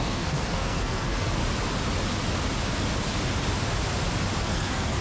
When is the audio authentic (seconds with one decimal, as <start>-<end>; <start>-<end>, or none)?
1.4-4.4

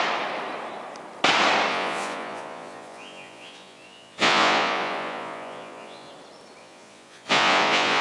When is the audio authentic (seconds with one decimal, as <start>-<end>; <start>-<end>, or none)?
0.0-1.7; 6.1-6.6